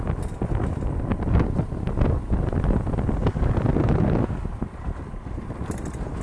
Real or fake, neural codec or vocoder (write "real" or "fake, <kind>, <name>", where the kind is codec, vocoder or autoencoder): real